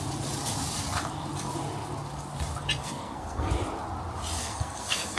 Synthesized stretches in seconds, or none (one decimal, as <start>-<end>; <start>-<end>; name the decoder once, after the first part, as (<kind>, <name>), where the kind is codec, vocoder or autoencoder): 2.8-3.5 (codec, SNAC); 4.4-5.2